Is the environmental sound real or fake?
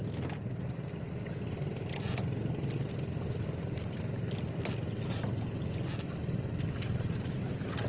real